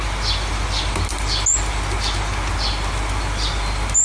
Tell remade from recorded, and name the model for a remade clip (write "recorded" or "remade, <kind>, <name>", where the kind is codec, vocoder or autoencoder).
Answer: recorded